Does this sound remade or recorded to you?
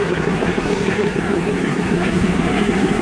remade